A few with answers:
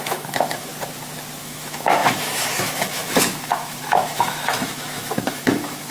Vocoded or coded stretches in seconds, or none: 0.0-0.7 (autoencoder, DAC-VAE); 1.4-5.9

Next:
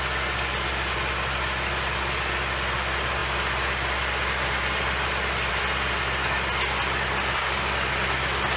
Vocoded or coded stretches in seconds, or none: none

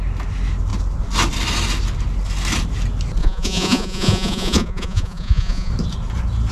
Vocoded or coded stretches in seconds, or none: 3.2-5.7 (vocoder, Vocos)

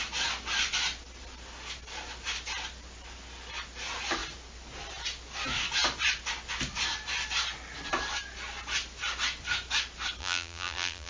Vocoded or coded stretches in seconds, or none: 10.2-11.1 (vocoder, BigVGAN v2)

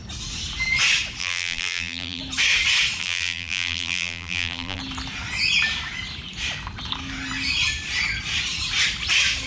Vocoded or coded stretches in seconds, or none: 1.2-2.2 (vocoder, BigVGAN v2); 3.0-4.8